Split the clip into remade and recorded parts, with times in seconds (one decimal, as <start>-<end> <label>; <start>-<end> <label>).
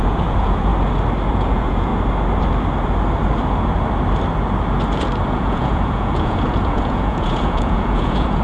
0.0-0.7 remade; 0.7-1.3 recorded; 1.3-1.9 remade; 1.9-5.3 recorded; 5.3-8.4 remade